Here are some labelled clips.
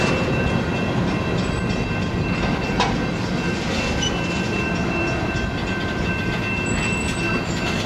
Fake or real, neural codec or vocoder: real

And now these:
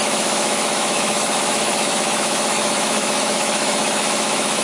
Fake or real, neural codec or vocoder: fake, autoencoder, DAC-VAE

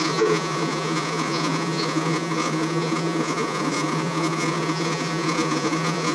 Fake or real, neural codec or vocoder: fake, vocoder, Vocos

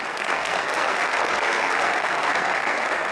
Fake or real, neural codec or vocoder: fake, codec, SNAC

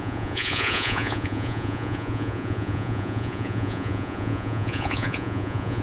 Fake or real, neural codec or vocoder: fake, vocoder, Vocos